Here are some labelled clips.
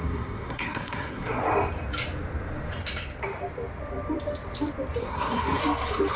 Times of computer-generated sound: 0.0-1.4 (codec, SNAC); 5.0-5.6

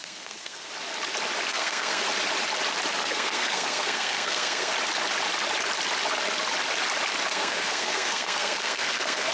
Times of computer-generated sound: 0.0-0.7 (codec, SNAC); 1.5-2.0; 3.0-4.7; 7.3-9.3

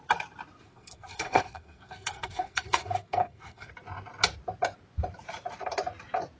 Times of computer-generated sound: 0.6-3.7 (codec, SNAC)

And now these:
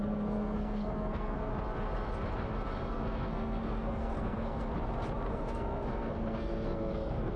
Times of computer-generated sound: 0.0-1.5 (codec, SNAC); 2.9-4.7; 5.3-7.4